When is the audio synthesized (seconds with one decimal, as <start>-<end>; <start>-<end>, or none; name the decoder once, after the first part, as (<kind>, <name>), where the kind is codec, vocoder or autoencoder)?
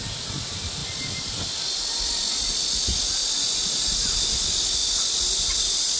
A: none